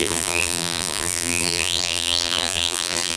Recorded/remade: remade